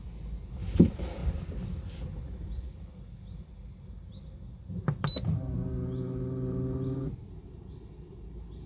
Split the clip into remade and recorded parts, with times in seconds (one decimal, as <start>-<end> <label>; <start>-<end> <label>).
0.0-8.7 recorded